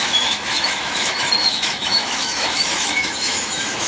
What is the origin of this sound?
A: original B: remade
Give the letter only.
B